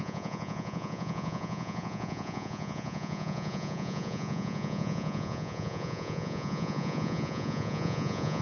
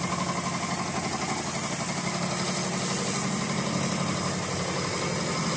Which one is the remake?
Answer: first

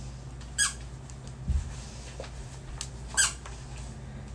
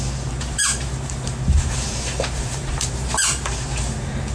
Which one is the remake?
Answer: second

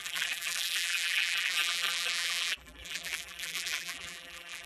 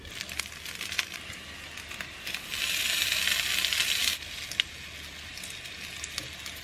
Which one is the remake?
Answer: first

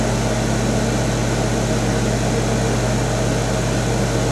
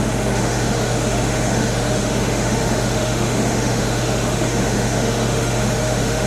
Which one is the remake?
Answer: second